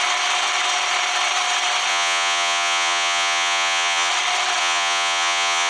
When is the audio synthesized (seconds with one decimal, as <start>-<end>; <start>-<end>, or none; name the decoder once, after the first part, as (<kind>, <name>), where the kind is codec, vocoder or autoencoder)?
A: 1.9-4.1 (vocoder, Vocos); 4.6-5.7